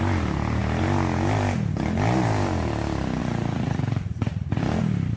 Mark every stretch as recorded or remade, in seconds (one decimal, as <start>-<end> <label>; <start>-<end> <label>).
0.0-3.2 recorded; 3.2-4.6 remade; 4.6-5.2 recorded